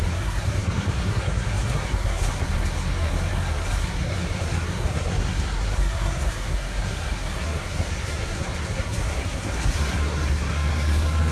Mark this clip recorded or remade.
remade